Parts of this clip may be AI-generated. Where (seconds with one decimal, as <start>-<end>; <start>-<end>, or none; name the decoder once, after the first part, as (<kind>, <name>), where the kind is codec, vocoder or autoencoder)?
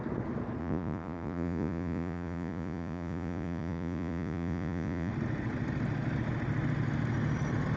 0.6-5.1 (vocoder, Vocos)